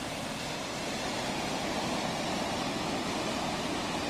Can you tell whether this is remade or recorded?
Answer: recorded